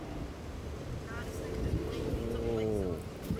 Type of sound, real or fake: real